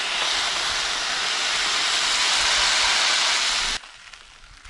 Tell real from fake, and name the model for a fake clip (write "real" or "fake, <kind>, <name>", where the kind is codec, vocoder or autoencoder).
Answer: real